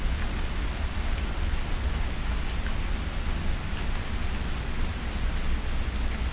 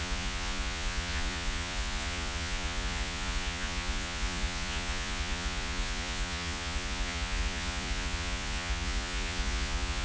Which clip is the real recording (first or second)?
first